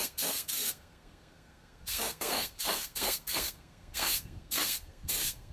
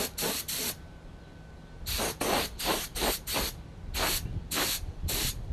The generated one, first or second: first